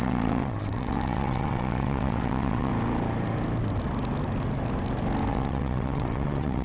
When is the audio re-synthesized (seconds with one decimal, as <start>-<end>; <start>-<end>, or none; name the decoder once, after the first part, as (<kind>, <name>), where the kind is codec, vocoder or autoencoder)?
0.0-2.7 (vocoder, WaveNeXt); 5.3-6.6